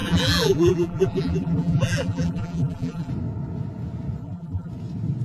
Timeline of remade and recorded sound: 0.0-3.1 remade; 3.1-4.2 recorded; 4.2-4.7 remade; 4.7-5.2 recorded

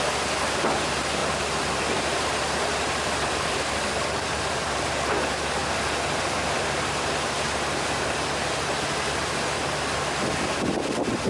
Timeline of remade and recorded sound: 0.0-1.2 recorded; 1.2-4.8 remade; 4.8-11.3 recorded

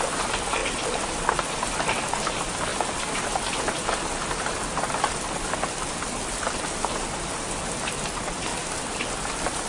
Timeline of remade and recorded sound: 0.0-0.6 recorded; 0.6-1.3 remade; 1.3-9.7 recorded

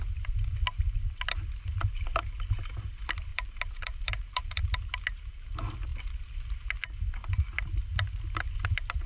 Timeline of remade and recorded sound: 0.0-3.3 recorded; 3.3-4.6 remade; 4.6-9.1 recorded

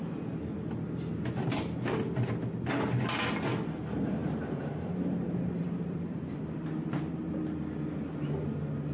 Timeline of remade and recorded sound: 0.0-4.2 recorded; 4.2-6.4 remade; 6.4-8.9 recorded

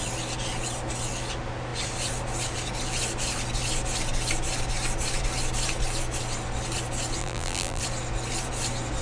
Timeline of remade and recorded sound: 0.0-7.2 recorded; 7.2-7.8 remade; 7.8-9.0 recorded

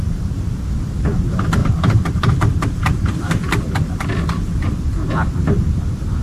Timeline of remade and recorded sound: 0.0-1.6 recorded; 1.6-5.1 remade; 5.1-6.2 recorded

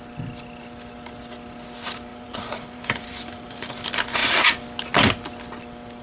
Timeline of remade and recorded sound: 0.0-2.1 recorded; 2.1-3.7 remade; 3.7-6.0 recorded